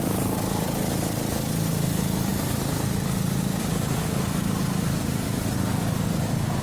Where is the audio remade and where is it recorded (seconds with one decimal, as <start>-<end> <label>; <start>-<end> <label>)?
0.0-6.6 recorded